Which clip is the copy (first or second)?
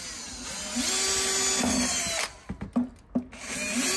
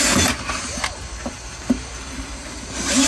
second